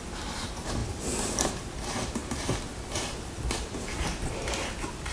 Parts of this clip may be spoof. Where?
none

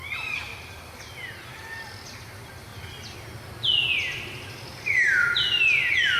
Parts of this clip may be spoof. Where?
none

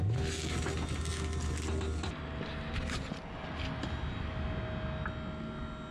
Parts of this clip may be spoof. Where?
none

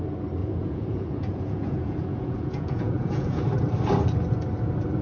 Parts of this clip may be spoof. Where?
0.4-3.4

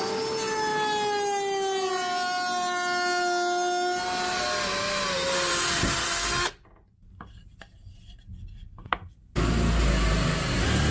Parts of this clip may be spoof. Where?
none

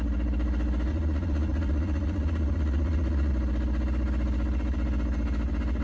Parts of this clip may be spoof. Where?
0.9-3.3

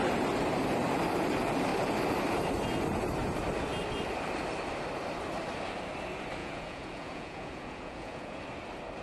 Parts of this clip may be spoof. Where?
6.4-8.4